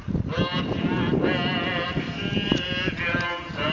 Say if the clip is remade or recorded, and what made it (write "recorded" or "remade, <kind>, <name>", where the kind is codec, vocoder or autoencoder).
recorded